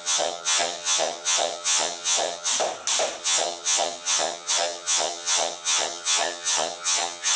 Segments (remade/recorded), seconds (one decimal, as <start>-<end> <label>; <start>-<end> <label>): 0.0-2.5 remade; 2.5-3.2 recorded; 3.2-7.4 remade